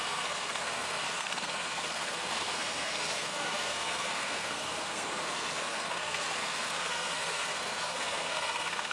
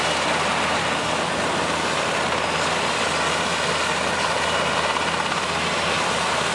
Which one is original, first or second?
second